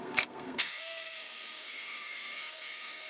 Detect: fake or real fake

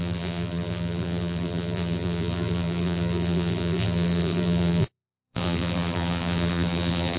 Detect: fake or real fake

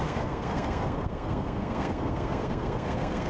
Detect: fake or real fake